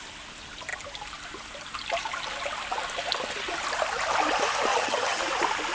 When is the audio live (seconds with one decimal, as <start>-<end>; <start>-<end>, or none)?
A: 0.0-4.7; 5.2-5.7

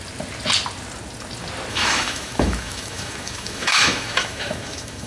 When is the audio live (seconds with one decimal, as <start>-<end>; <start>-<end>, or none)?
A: 0.0-1.7

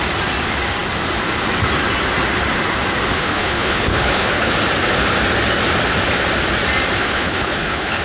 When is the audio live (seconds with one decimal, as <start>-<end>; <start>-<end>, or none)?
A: 0.0-3.1; 4.5-7.0

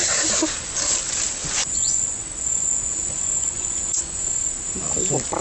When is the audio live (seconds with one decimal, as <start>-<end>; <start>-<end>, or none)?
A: 0.0-1.4; 4.3-5.4

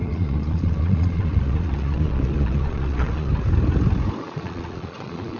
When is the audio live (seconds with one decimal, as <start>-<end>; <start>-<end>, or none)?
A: 3.3-4.2